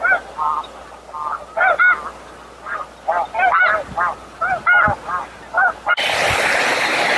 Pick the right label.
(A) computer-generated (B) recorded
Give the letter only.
B